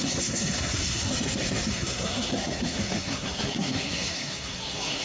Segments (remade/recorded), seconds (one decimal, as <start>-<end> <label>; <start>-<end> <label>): 0.0-1.1 remade; 1.1-1.7 recorded; 1.7-5.0 remade